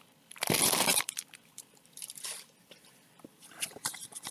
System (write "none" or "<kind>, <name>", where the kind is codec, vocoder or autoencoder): vocoder, BigVGAN v2